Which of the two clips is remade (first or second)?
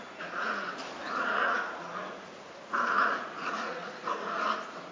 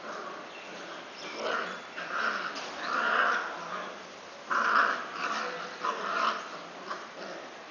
first